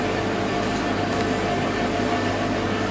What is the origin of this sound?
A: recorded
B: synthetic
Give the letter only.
A